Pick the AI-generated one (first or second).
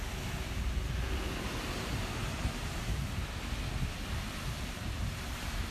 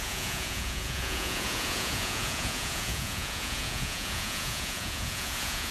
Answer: second